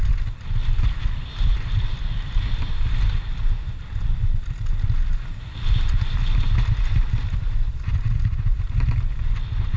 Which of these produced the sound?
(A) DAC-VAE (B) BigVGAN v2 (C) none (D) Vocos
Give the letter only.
C